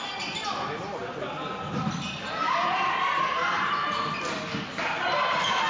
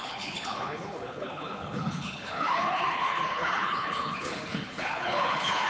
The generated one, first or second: second